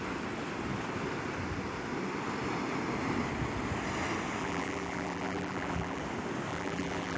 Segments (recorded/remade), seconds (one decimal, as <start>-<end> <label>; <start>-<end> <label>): 0.0-4.4 recorded; 4.4-6.0 remade; 6.0-6.5 recorded; 6.5-7.2 remade